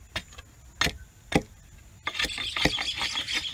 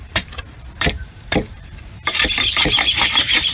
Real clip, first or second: first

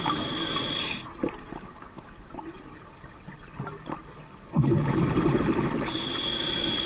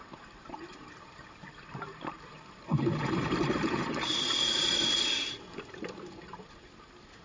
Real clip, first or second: first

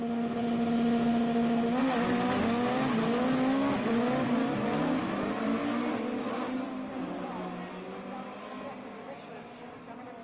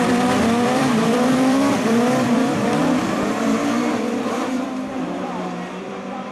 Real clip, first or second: first